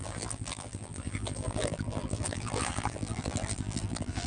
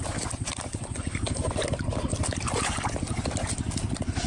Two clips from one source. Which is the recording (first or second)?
second